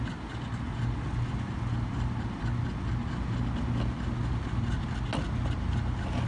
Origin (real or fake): real